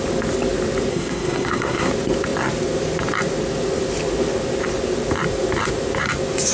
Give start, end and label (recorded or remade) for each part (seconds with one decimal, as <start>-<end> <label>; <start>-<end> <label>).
0.0-0.9 recorded; 0.9-1.9 remade; 1.9-6.5 recorded